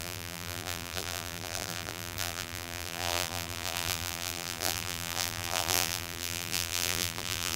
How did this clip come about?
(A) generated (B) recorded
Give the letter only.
A